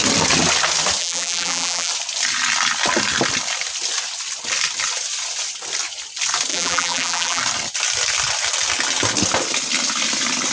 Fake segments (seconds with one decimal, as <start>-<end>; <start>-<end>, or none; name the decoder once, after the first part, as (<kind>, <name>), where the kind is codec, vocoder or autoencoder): 1.0-1.9 (vocoder, BigVGAN v2); 6.5-7.4